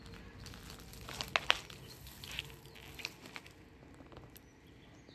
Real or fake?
real